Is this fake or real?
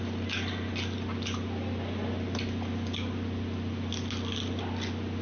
real